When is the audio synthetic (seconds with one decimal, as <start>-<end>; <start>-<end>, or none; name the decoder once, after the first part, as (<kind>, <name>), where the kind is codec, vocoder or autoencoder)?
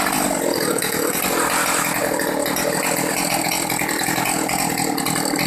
0.5-1.2 (codec, DAC)